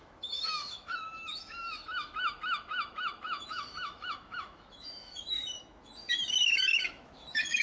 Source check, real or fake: fake